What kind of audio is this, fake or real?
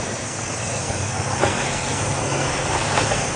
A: fake